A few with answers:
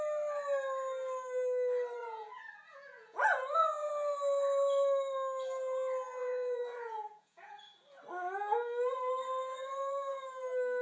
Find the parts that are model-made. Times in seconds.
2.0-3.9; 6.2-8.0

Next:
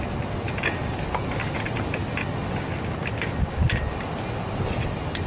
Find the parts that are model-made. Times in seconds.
none

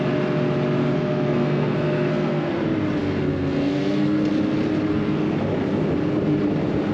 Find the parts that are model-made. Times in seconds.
0.8-2.6; 3.0-4.3; 4.9-5.4

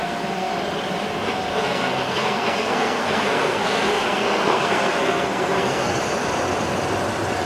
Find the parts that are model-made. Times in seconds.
0.0-0.5; 1.5-6.0

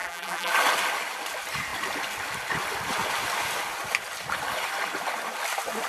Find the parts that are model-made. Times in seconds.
0.0-0.5